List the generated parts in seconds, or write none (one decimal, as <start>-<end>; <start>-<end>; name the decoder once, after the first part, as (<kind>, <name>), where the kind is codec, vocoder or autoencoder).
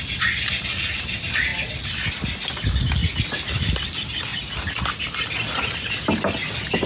none